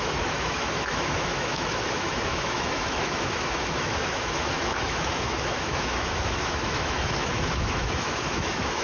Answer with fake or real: fake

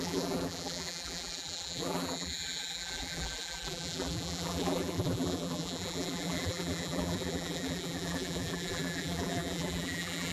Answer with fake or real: fake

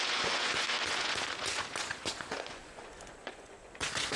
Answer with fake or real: fake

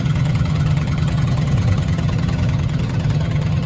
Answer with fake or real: fake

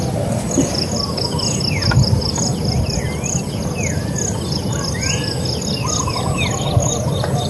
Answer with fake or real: real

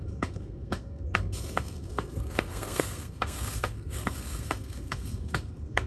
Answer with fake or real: fake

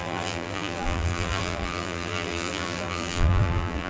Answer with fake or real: fake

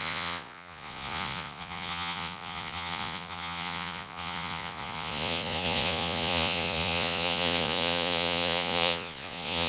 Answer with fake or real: fake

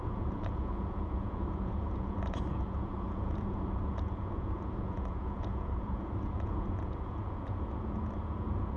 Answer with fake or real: fake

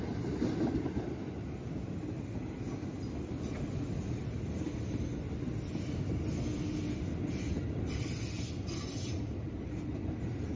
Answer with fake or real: real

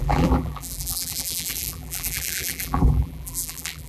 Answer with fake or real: fake